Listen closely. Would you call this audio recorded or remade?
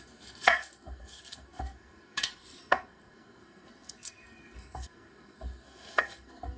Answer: remade